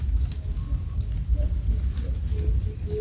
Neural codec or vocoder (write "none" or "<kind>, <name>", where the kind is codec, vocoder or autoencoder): none